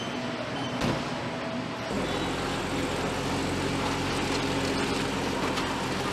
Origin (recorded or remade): recorded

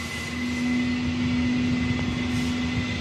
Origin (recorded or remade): recorded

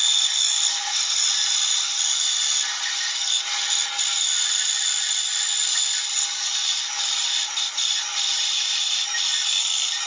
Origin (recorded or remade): recorded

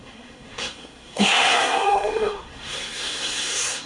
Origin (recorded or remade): remade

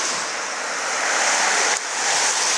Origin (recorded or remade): recorded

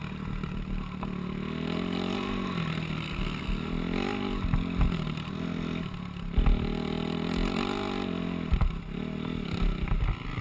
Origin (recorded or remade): recorded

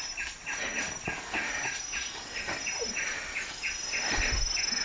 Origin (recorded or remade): recorded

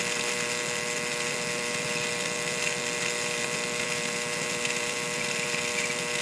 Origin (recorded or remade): recorded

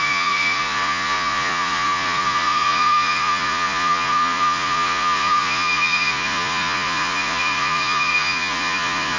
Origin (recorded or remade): remade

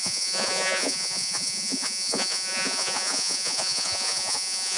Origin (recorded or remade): remade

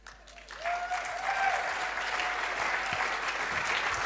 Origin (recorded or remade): recorded